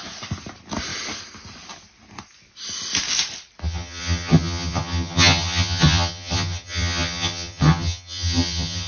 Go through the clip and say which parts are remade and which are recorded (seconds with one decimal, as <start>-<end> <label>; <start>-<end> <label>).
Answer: 0.0-3.6 recorded; 3.6-8.9 remade